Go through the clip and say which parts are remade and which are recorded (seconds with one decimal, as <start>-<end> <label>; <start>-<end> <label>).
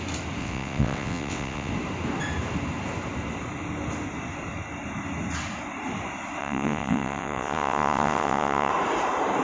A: 0.0-0.4 recorded; 0.4-1.7 remade; 1.7-6.4 recorded; 6.4-8.7 remade; 8.7-9.4 recorded